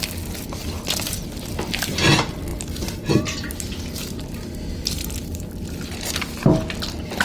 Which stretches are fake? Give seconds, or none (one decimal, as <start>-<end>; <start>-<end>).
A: 0.6-1.2